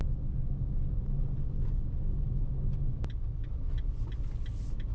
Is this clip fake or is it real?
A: real